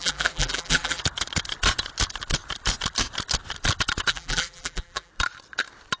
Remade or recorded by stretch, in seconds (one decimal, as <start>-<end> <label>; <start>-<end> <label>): 0.0-1.0 remade; 1.0-4.1 recorded; 4.1-5.1 remade; 5.1-6.0 recorded